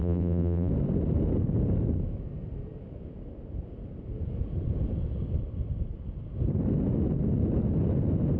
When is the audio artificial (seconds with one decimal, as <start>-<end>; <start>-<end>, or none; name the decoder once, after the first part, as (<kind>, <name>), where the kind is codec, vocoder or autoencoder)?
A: 0.0-0.7 (vocoder, BigVGAN v2)